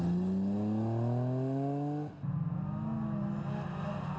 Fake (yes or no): no